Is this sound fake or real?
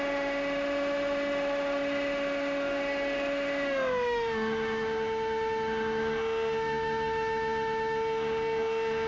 fake